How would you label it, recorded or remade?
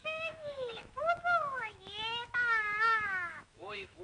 remade